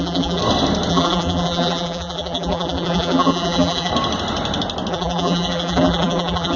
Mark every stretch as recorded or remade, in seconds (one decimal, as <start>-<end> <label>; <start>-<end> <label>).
0.0-0.4 remade; 0.4-0.9 recorded; 0.9-3.9 remade; 3.9-4.9 recorded; 4.9-6.6 remade